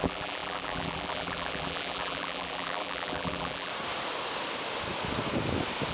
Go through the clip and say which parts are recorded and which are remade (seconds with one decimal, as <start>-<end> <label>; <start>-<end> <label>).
0.0-3.7 remade; 3.7-5.9 recorded